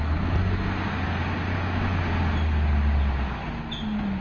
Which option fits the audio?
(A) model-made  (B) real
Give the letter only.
B